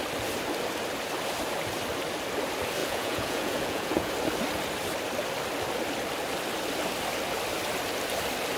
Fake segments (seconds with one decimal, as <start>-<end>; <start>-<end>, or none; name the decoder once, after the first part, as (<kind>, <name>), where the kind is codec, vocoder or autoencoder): 2.8-4.1 (vocoder, Vocos)